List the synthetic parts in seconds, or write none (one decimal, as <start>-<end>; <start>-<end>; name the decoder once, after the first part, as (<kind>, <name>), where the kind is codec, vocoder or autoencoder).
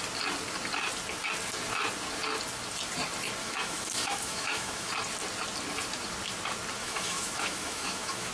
3.4-4.9 (autoencoder, DAC-VAE); 6.8-8.3